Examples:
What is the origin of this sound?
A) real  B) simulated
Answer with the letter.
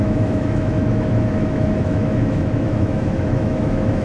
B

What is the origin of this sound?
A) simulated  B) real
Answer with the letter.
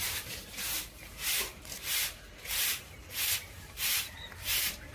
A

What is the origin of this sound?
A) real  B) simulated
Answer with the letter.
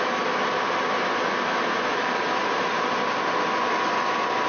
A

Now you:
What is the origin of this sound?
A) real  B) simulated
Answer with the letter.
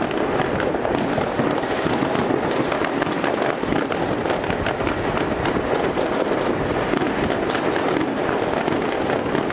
A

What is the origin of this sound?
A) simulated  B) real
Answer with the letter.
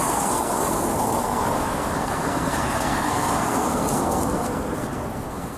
A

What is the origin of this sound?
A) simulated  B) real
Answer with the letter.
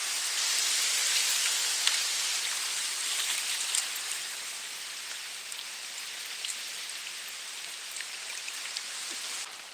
B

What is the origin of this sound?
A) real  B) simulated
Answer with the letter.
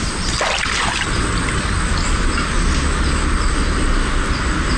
A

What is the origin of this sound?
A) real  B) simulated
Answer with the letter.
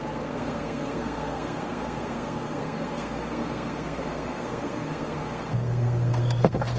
B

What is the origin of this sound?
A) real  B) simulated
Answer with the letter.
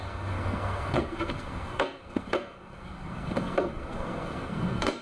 B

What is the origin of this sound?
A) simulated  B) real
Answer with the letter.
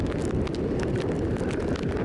B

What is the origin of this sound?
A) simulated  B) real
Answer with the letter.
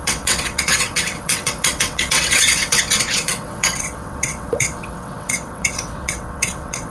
A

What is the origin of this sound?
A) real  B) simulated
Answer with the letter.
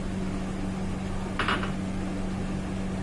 A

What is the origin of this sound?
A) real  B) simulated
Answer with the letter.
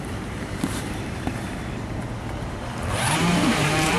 B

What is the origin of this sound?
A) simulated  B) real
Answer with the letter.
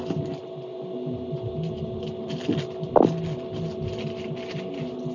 B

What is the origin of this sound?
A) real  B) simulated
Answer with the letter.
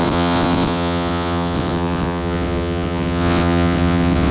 B